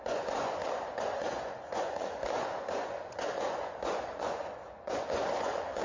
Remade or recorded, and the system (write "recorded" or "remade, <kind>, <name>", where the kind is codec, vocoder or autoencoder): remade, vocoder, Vocos